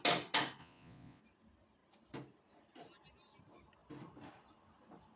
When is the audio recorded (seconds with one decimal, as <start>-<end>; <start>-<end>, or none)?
0.0-0.6; 1.2-5.2